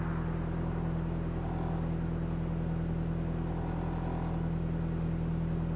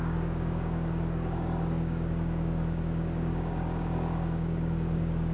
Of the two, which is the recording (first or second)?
first